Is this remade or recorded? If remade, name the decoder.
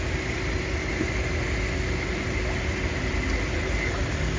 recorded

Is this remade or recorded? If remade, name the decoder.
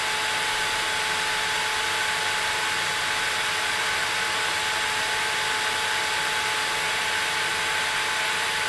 recorded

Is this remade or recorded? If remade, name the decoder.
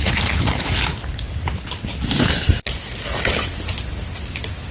recorded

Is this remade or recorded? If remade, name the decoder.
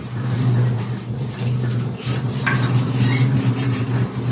remade, vocoder, BigVGAN v2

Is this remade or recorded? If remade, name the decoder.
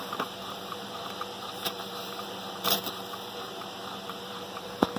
remade, vocoder, BigVGAN v2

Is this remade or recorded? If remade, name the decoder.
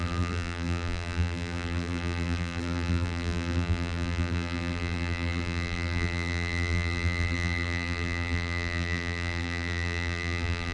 remade, vocoder, BigVGAN v2